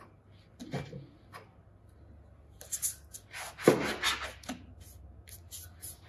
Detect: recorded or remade recorded